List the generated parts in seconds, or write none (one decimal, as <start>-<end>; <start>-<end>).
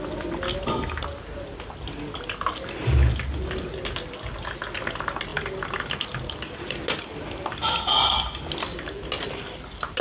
none